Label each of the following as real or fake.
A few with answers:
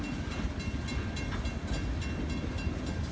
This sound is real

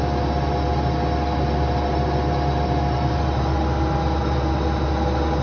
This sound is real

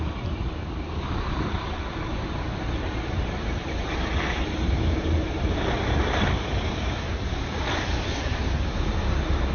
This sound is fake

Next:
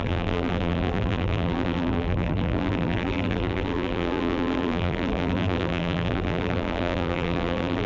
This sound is fake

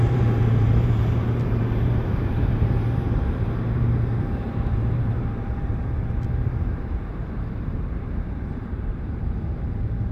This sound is fake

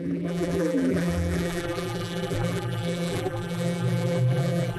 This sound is fake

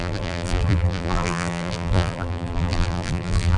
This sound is fake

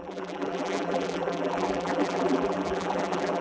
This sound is fake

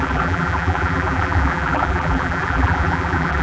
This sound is fake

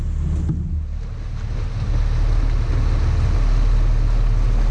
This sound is real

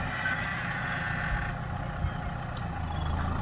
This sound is real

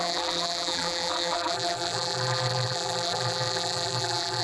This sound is fake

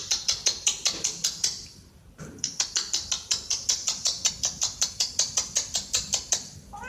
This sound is fake